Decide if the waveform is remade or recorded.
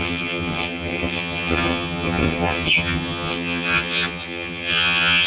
remade